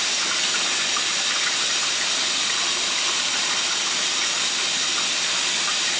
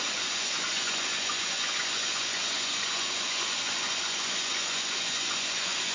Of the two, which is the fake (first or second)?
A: second